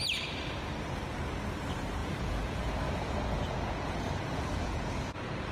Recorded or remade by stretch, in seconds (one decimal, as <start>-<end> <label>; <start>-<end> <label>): 0.0-2.0 recorded; 2.0-5.5 remade

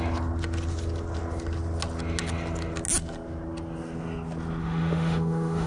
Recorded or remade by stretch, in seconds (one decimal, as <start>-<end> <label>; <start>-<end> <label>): 0.0-4.6 recorded; 4.6-5.7 remade

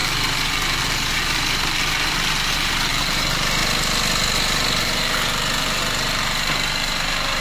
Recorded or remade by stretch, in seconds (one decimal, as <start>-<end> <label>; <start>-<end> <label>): 0.0-3.6 remade; 3.6-4.8 recorded; 4.8-7.4 remade

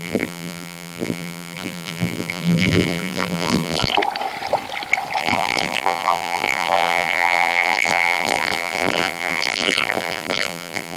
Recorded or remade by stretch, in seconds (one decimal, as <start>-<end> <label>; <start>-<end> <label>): 0.0-3.9 remade; 3.9-5.2 recorded; 5.2-11.0 remade

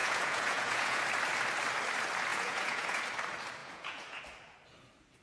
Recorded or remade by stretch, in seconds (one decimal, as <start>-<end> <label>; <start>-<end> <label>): 0.0-1.0 remade; 1.0-2.3 recorded; 2.3-3.0 remade; 3.0-3.6 recorded; 3.6-4.2 remade; 4.2-5.2 recorded